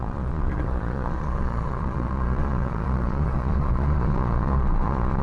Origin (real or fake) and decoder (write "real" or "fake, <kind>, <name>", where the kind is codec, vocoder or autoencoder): fake, vocoder, Vocos